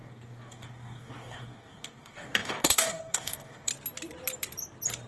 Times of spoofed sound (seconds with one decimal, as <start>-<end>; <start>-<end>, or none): 0.0-3.7